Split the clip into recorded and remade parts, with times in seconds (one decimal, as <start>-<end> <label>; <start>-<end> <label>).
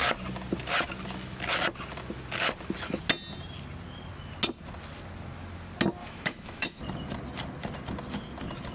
0.0-6.0 recorded; 6.0-6.8 remade; 6.8-8.7 recorded